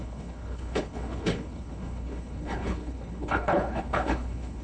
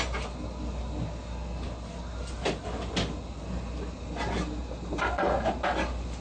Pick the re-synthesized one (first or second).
first